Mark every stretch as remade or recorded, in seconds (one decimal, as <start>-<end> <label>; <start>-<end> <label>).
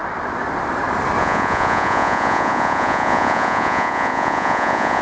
0.0-1.2 recorded; 1.2-5.0 remade